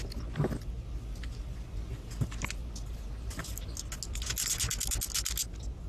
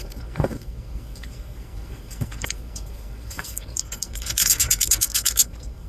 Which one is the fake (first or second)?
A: second